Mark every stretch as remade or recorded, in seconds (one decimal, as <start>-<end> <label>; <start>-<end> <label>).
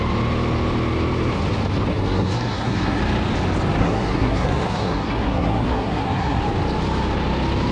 0.0-1.9 recorded; 1.9-3.0 remade; 3.0-3.8 recorded; 3.8-6.4 remade; 6.4-7.7 recorded